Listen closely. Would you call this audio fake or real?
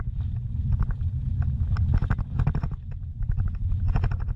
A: real